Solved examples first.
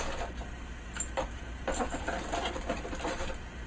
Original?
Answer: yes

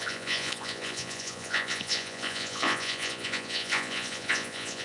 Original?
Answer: no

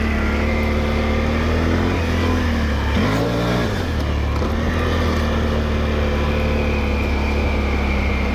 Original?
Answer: yes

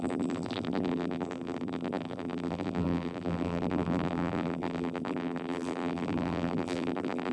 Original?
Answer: no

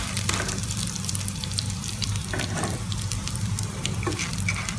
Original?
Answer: no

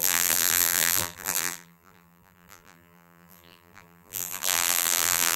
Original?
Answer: no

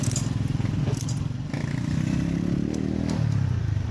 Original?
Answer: yes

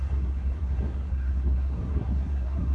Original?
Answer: no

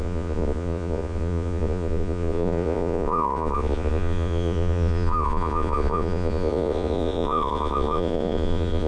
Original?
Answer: no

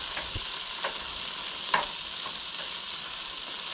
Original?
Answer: yes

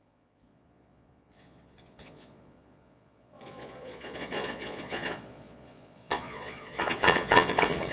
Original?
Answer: no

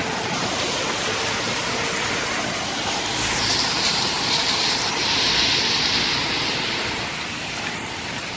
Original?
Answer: yes